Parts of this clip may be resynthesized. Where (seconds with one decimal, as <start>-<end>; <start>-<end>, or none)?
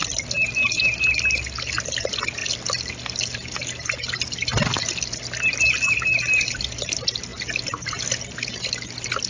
none